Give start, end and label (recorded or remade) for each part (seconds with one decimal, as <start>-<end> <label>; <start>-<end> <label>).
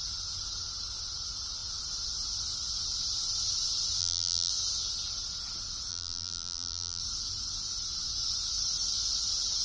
0.0-4.0 recorded; 4.0-4.5 remade; 4.5-5.9 recorded; 5.9-7.0 remade; 7.0-9.6 recorded